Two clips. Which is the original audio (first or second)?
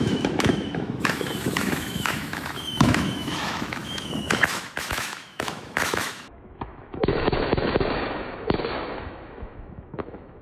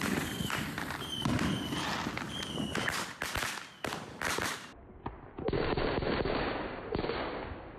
second